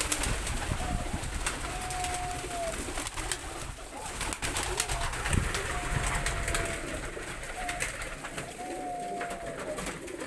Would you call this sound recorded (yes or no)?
yes